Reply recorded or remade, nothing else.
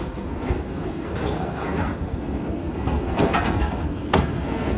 remade